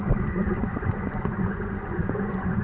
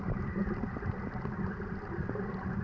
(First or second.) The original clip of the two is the second